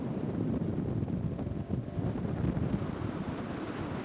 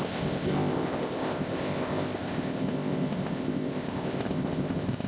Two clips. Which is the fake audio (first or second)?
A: second